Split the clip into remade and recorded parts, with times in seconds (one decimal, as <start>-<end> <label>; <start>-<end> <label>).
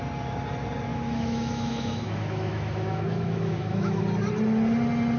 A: 0.0-0.9 recorded; 0.9-4.0 remade; 4.0-5.2 recorded